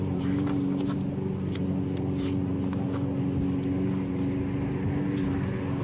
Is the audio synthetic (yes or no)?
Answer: no